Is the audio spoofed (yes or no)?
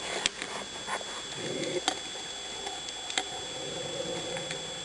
no